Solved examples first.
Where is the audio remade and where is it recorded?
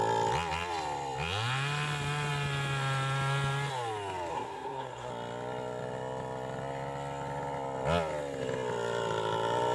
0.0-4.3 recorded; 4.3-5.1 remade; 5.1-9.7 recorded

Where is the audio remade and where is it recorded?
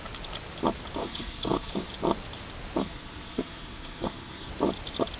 0.0-1.0 recorded; 1.0-1.7 remade; 1.7-2.8 recorded; 2.8-4.5 remade; 4.5-5.2 recorded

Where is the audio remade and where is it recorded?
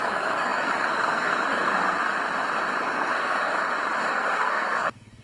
0.0-2.1 remade; 2.1-2.8 recorded; 2.8-3.5 remade; 3.5-4.1 recorded; 4.1-5.2 remade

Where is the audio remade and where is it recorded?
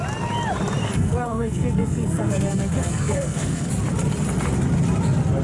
0.0-0.8 recorded; 0.8-3.7 remade; 3.7-5.4 recorded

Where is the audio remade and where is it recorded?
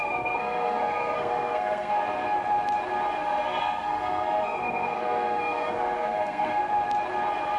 0.0-1.9 remade; 1.9-3.2 recorded; 3.2-6.7 remade; 6.7-7.6 recorded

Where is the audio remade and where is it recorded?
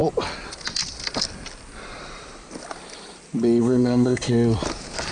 0.0-3.6 recorded; 3.6-4.3 remade; 4.3-5.1 recorded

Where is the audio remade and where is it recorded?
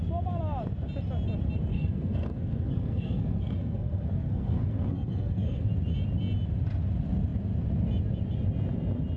0.0-1.7 recorded; 1.7-5.7 remade; 5.7-9.2 recorded